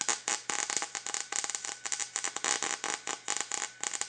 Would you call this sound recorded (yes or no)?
yes